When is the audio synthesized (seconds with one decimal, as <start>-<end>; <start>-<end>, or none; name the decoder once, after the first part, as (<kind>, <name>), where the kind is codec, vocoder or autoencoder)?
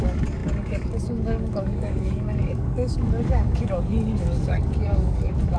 0.0-5.6 (codec, DAC)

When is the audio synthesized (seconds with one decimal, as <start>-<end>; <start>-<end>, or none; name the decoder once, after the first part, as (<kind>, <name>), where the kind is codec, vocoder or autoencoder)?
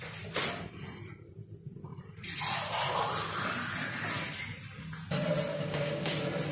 5.5-6.1 (codec, DAC)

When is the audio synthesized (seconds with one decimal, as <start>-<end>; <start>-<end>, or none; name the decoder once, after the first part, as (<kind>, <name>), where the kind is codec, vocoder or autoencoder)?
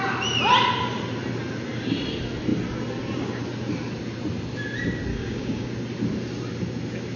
5.1-5.7 (codec, DAC)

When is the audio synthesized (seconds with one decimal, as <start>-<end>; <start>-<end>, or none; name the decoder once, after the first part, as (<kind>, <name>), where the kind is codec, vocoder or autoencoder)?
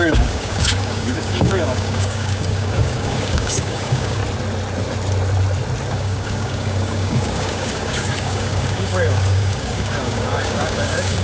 0.0-4.2 (codec, DAC); 5.9-11.2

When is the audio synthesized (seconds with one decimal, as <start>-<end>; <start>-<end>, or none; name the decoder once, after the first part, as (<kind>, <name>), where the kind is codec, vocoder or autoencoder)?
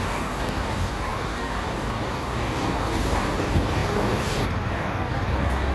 0.0-5.7 (codec, DAC)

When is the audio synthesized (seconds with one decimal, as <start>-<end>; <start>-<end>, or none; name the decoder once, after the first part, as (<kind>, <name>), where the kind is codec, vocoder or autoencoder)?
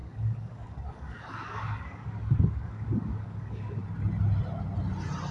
0.0-3.8 (codec, DAC)